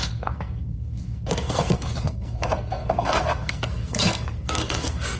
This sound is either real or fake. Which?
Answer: fake